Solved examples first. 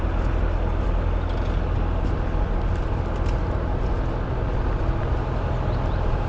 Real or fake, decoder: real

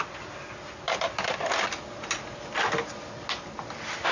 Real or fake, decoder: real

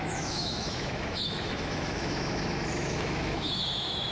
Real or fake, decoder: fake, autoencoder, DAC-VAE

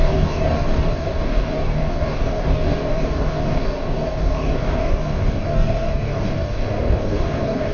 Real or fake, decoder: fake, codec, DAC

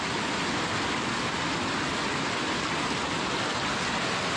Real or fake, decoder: real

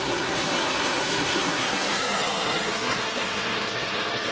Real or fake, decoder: fake, codec, SNAC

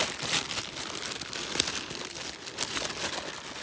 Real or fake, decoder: real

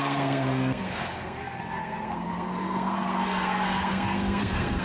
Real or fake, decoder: fake, codec, SNAC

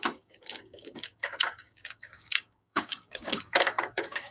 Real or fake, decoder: fake, codec, DAC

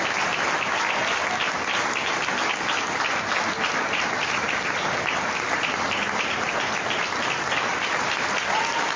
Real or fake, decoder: real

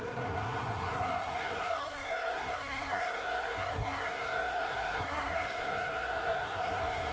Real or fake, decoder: fake, codec, SNAC